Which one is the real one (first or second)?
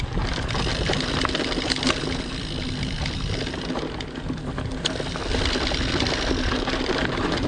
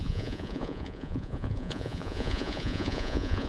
first